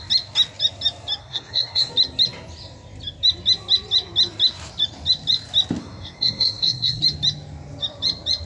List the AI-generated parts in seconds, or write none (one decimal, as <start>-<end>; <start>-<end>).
1.2-1.9; 5.8-7.0